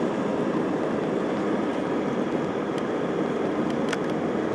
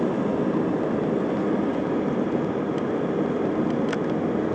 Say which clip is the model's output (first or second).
first